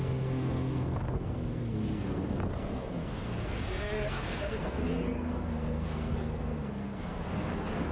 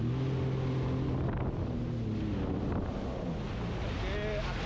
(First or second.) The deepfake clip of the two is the first